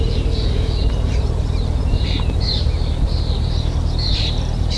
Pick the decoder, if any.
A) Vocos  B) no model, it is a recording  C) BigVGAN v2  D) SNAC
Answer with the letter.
C